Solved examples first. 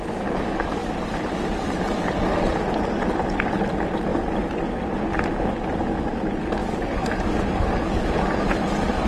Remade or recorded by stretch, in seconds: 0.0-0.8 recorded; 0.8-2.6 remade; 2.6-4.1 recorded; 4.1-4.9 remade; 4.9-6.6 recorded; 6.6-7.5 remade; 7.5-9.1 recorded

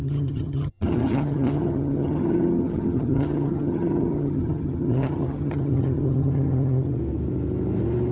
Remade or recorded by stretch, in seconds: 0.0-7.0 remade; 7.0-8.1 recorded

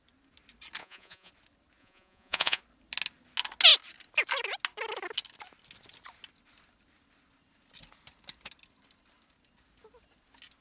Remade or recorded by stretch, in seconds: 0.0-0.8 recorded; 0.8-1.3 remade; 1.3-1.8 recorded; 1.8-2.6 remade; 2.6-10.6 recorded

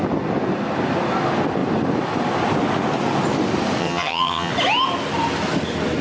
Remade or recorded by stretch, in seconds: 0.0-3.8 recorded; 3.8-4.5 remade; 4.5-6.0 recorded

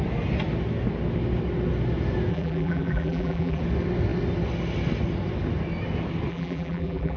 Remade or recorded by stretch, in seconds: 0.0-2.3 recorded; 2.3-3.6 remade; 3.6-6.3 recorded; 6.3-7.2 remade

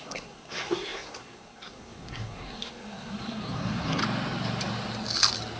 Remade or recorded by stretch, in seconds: 0.0-4.0 remade; 4.0-5.6 recorded

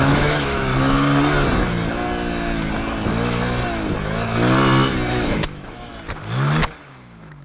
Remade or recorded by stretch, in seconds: 0.0-0.7 remade; 0.7-5.1 recorded; 5.1-5.9 remade; 5.9-6.9 recorded; 6.9-7.4 remade

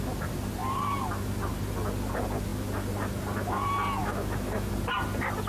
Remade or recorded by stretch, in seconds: 0.0-4.0 recorded; 4.0-4.7 remade; 4.7-5.5 recorded